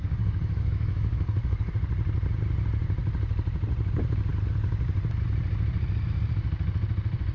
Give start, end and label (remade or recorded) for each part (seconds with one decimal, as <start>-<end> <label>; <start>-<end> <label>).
0.0-1.7 remade; 1.7-7.3 recorded